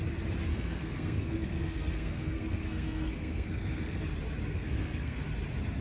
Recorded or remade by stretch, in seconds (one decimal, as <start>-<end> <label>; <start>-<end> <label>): 0.0-0.5 recorded; 0.5-4.0 remade; 4.0-4.5 recorded; 4.5-5.2 remade; 5.2-5.8 recorded